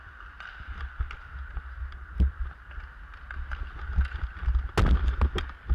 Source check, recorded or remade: recorded